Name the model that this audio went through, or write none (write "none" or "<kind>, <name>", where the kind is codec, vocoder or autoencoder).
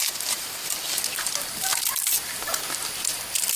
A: none